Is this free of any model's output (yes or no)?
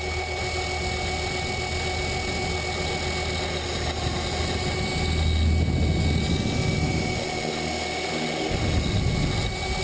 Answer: yes